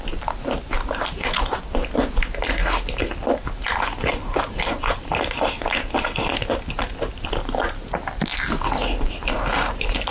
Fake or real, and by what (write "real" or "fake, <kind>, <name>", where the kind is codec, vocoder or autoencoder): real